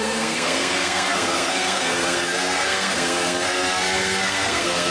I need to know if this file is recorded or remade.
remade